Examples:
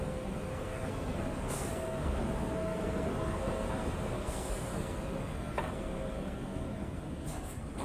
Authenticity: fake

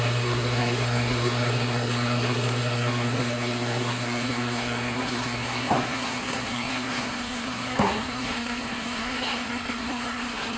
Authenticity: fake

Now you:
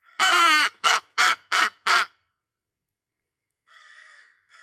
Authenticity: fake